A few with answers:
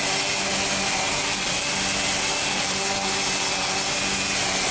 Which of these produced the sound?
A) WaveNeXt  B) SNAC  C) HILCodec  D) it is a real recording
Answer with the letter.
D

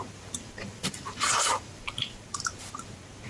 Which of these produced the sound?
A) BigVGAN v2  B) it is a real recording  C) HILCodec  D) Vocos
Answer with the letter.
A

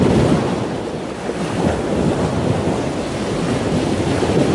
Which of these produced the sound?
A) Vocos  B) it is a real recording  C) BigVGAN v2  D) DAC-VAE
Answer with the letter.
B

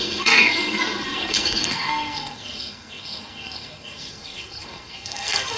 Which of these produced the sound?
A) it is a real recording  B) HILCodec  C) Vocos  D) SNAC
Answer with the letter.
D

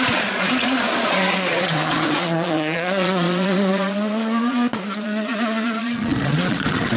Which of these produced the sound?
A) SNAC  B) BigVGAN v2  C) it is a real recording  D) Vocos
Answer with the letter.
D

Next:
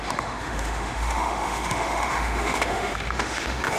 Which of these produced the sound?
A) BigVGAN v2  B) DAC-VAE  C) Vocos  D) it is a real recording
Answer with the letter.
B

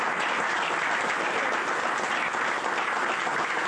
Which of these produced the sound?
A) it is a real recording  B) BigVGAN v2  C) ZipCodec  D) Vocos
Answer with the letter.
A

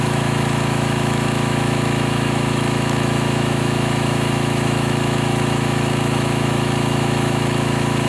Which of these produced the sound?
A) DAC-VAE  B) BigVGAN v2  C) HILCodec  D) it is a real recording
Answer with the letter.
A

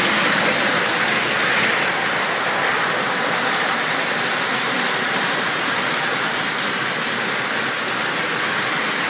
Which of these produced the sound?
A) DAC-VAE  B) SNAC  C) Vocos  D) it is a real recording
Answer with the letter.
D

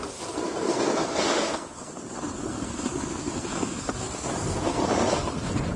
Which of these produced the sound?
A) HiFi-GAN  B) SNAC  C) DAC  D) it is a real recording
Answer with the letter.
B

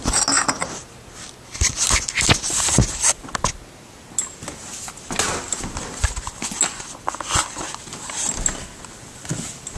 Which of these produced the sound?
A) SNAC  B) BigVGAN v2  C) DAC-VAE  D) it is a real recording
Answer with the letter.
D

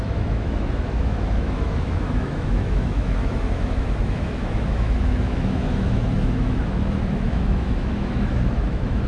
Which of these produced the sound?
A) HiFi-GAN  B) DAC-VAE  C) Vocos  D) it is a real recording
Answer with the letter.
B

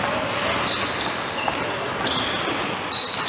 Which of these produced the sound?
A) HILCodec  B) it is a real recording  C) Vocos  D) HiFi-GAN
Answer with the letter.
B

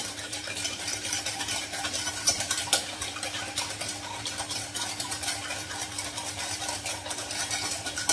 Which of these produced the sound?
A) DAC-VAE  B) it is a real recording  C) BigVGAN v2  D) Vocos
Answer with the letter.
C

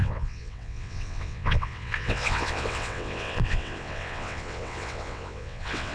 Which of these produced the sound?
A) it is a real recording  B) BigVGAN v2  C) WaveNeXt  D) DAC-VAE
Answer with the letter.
C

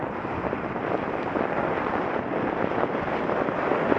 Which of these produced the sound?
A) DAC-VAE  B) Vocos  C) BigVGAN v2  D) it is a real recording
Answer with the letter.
D